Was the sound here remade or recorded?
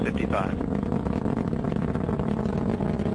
recorded